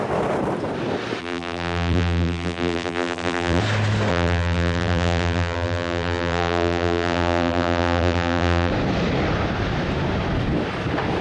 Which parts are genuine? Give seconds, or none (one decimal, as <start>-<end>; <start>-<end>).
0.0-1.2; 3.6-4.1; 8.7-11.2